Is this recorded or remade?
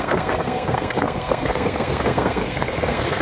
remade